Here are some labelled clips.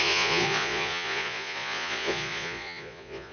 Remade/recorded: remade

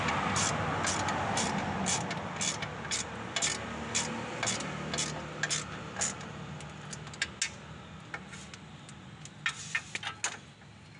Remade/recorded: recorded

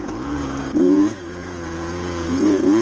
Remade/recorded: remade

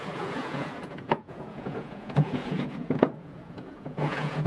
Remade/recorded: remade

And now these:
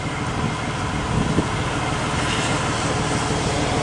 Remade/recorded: recorded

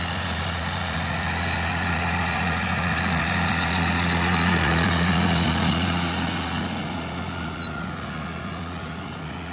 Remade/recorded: remade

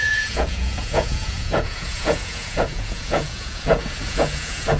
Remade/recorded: remade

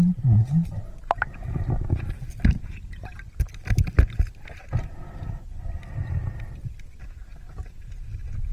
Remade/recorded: recorded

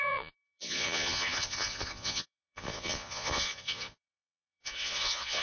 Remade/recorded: remade